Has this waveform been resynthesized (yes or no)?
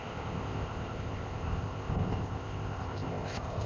yes